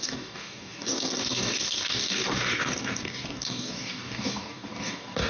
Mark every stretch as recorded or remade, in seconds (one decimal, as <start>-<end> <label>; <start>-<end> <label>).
0.0-5.3 remade